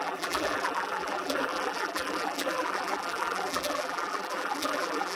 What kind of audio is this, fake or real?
fake